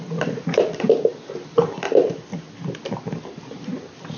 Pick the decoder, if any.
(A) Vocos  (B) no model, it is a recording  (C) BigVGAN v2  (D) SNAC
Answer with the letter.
B